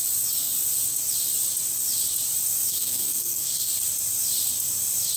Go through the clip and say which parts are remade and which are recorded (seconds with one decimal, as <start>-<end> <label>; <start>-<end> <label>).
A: 0.0-2.7 recorded; 2.7-3.7 remade; 3.7-5.2 recorded